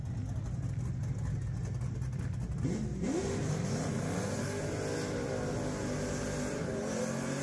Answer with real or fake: real